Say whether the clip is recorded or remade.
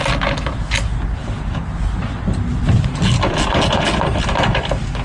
recorded